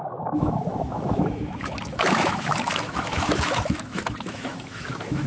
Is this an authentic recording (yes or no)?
no